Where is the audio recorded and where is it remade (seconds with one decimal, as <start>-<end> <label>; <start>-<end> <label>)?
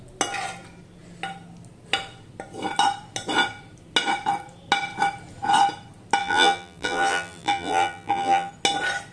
0.0-6.2 recorded; 6.2-8.5 remade; 8.5-9.1 recorded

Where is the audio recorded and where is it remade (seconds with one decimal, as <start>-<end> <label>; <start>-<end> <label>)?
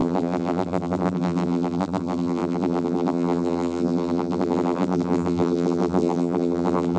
0.0-7.0 remade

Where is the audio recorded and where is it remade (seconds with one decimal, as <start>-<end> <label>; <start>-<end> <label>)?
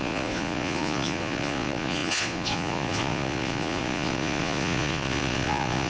0.0-5.9 remade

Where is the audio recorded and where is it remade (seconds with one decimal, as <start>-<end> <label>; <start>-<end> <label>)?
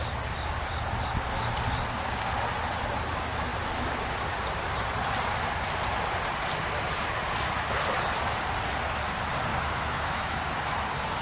0.0-9.5 recorded; 9.5-10.4 remade; 10.4-11.2 recorded